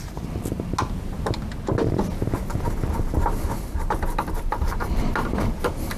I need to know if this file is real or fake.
real